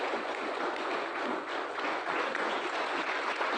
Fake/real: fake